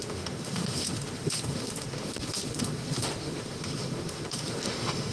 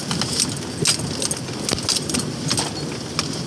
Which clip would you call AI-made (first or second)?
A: first